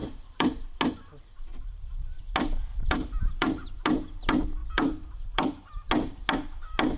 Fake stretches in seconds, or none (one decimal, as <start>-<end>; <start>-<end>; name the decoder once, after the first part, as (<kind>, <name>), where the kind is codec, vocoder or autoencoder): 0.0-0.8 (vocoder, BigVGAN v2); 1.5-2.2; 2.7-3.8; 4.6-5.7